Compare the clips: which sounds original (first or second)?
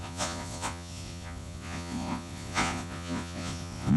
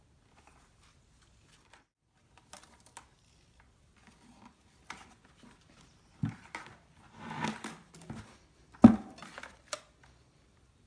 second